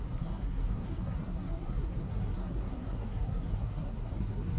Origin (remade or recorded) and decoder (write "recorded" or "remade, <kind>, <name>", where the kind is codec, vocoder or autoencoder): remade, codec, SNAC